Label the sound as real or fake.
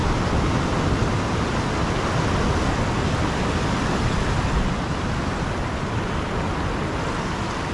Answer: real